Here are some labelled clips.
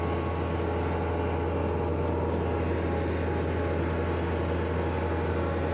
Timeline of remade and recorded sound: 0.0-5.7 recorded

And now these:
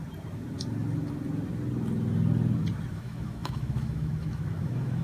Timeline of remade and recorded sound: 0.0-2.9 recorded; 2.9-5.0 remade

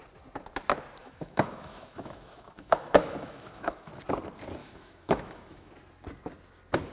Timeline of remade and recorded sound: 0.0-1.0 recorded; 1.0-3.9 remade; 3.9-4.6 recorded; 4.6-5.7 remade; 5.7-6.9 recorded

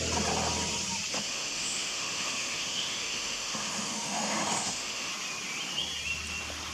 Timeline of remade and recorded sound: 0.0-1.1 recorded; 1.1-5.1 remade; 5.1-6.7 recorded

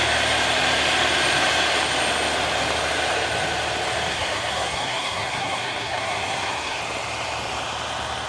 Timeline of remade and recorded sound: 0.0-4.1 recorded; 4.1-6.8 remade; 6.8-8.3 recorded

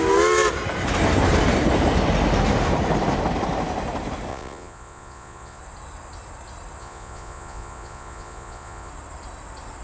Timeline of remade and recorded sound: 0.0-4.3 recorded; 4.3-5.6 remade; 5.6-6.8 recorded; 6.8-8.9 remade; 8.9-9.8 recorded

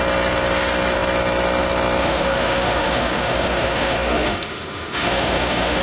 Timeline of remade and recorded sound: 0.0-2.0 recorded; 2.0-5.8 remade

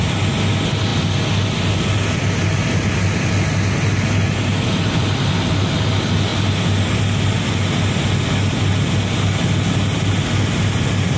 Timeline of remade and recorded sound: 0.0-6.3 recorded; 6.3-7.2 remade; 7.2-11.2 recorded